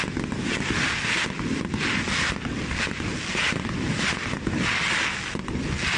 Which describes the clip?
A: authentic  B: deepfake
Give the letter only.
A